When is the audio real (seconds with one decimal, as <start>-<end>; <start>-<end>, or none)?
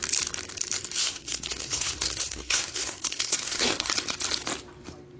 0.0-1.0; 3.9-5.2